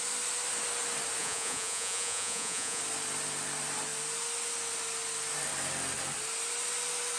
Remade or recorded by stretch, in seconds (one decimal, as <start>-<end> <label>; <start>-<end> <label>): 0.0-1.2 recorded; 1.2-2.8 remade; 2.8-7.2 recorded